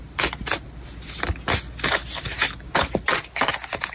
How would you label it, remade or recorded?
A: recorded